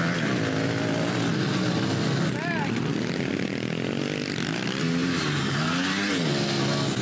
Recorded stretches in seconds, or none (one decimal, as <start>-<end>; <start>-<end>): 0.0-5.0; 5.6-7.0